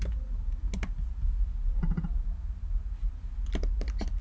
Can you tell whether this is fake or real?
real